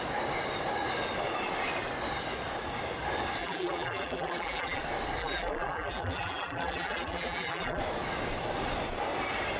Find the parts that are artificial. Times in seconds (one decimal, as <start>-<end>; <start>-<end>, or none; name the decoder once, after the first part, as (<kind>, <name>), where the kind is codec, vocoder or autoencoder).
3.4-4.8 (vocoder, BigVGAN v2); 5.2-7.8

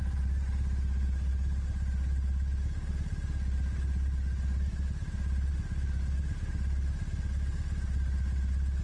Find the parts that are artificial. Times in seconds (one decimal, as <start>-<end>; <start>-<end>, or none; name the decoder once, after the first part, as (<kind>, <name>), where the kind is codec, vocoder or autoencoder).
none